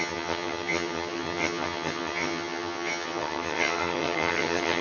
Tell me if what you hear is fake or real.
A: fake